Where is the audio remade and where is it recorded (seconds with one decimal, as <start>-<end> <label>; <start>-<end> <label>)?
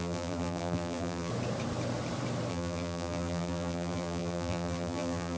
0.0-1.3 remade; 1.3-2.5 recorded; 2.5-5.4 remade